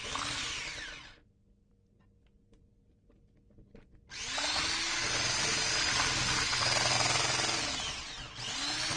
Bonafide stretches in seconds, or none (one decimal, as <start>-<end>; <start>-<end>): 0.0-9.0